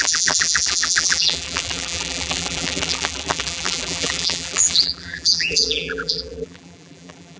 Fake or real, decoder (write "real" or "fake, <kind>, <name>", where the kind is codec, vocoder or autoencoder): fake, vocoder, BigVGAN v2